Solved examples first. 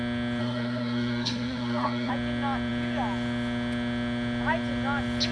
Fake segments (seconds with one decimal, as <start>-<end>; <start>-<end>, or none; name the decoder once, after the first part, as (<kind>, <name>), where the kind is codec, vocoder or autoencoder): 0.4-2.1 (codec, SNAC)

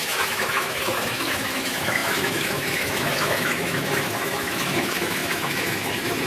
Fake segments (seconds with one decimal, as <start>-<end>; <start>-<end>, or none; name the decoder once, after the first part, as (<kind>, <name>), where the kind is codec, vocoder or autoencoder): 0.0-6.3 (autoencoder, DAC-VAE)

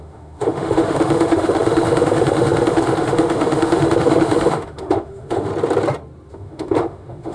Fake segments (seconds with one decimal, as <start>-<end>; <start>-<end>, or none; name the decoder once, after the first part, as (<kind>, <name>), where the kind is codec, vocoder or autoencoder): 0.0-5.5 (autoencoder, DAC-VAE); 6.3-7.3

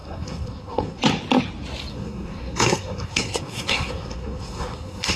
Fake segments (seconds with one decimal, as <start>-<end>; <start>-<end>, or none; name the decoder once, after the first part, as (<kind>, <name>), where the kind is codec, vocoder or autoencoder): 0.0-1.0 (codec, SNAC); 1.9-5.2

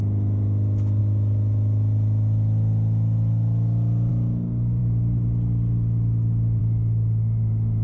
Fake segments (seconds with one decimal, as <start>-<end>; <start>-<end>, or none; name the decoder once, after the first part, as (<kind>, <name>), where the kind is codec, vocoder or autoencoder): none